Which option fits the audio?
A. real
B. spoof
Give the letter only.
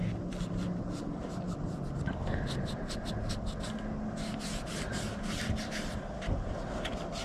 A